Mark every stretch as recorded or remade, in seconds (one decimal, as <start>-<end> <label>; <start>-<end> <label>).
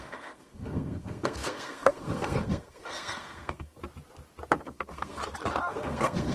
0.0-3.8 remade; 3.8-4.6 recorded; 4.6-5.2 remade; 5.2-5.7 recorded; 5.7-6.3 remade